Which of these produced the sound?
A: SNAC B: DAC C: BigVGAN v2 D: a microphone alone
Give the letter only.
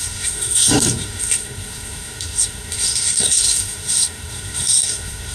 A